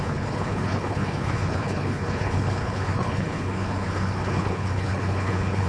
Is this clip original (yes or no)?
no